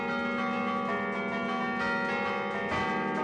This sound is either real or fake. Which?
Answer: real